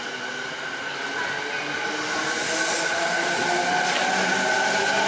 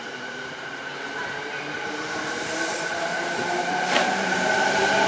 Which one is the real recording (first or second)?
first